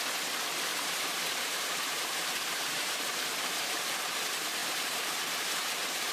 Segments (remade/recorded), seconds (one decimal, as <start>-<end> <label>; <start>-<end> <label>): 0.0-0.7 recorded; 0.7-4.0 remade; 4.0-4.6 recorded; 4.6-6.1 remade

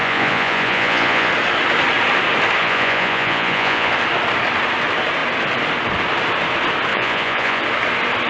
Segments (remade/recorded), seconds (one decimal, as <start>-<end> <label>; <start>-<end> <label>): 0.0-1.3 remade; 1.3-2.6 recorded; 2.6-3.9 remade; 3.9-6.9 recorded; 6.9-7.6 remade; 7.6-8.3 recorded

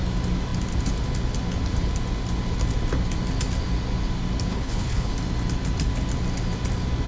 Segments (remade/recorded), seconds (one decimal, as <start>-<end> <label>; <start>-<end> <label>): 0.0-4.5 recorded; 4.5-5.1 remade; 5.1-7.1 recorded